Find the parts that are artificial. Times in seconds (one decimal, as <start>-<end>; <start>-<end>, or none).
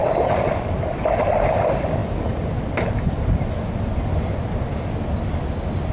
none